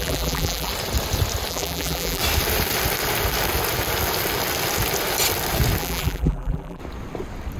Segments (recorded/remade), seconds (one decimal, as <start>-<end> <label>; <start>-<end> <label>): 0.0-0.7 remade; 0.7-1.5 recorded; 1.5-2.2 remade; 2.2-5.8 recorded; 5.8-6.8 remade; 6.8-7.6 recorded